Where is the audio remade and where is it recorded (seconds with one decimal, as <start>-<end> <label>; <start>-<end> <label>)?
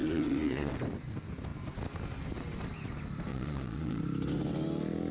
0.0-0.7 remade; 0.7-3.3 recorded; 3.3-4.0 remade; 4.0-5.1 recorded